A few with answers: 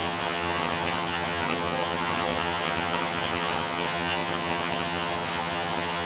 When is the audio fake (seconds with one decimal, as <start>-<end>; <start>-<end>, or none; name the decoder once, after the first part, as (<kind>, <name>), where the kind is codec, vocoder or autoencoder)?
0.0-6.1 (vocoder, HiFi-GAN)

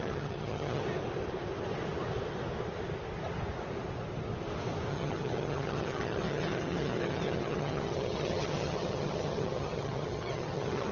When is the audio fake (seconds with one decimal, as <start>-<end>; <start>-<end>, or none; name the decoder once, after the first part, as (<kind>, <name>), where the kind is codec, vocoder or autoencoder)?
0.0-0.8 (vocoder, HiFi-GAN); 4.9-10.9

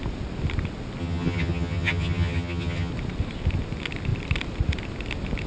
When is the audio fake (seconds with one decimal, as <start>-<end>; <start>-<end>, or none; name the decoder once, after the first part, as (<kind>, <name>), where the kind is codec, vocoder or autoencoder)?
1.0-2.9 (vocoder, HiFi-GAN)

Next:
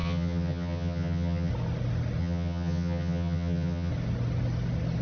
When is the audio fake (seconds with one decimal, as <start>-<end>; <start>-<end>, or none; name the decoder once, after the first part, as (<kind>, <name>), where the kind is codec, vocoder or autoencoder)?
0.0-1.5 (vocoder, HiFi-GAN); 2.2-3.9

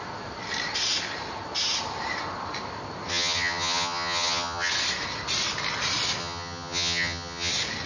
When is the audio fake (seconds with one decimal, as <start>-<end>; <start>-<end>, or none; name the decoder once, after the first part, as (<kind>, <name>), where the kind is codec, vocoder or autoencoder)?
3.1-4.7 (vocoder, HiFi-GAN); 6.2-7.5

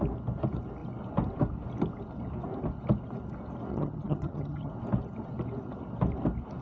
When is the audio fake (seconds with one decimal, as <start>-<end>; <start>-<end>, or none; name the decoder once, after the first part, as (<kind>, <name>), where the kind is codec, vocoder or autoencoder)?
3.7-4.7 (vocoder, HiFi-GAN)

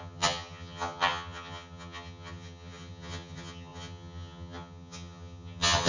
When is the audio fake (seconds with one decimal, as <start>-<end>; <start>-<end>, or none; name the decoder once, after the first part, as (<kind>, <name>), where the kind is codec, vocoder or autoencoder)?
0.0-5.9 (vocoder, HiFi-GAN)